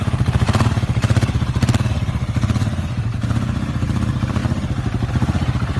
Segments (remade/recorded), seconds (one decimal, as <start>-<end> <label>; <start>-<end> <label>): 0.0-4.4 remade; 4.4-5.1 recorded; 5.1-5.8 remade